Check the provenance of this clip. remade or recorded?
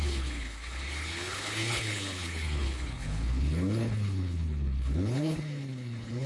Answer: remade